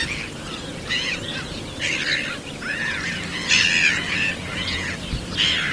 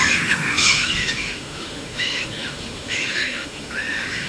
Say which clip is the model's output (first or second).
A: second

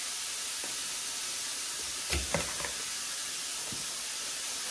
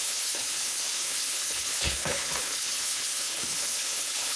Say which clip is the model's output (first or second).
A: second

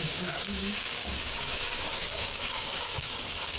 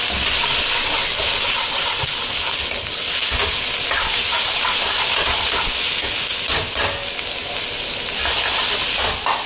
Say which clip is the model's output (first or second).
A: first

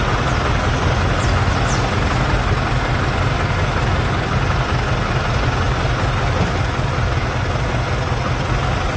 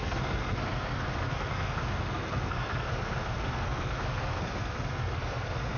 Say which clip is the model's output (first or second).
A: second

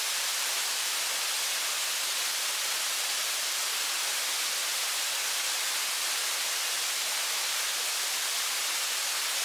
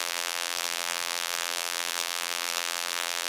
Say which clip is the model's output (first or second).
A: second